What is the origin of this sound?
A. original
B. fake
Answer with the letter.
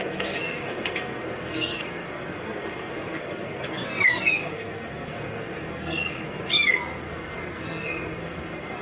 B